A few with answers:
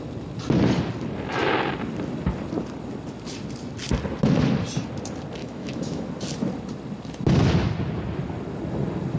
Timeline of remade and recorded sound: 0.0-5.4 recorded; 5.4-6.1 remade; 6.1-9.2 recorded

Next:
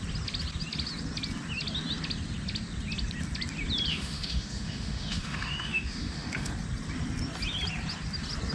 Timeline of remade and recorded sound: 0.0-3.9 recorded; 3.9-6.5 remade; 6.5-8.5 recorded